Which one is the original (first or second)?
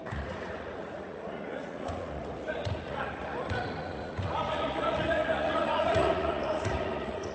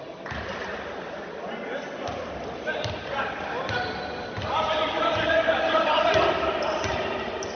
second